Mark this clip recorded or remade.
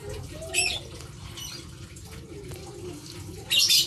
recorded